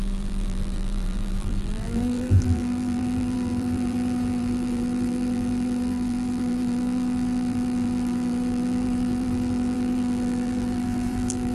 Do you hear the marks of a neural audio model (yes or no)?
yes